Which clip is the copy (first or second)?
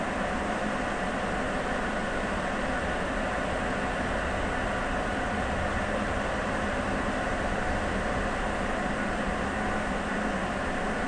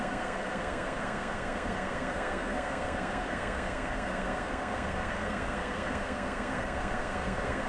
second